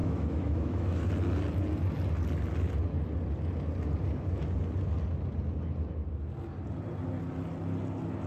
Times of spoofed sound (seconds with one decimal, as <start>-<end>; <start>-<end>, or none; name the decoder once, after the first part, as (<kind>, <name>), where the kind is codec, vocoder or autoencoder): 0.0-1.1 (autoencoder, DAC-VAE)